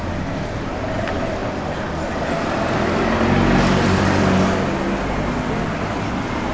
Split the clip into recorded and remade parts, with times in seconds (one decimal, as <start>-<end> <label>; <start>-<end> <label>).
0.0-6.5 recorded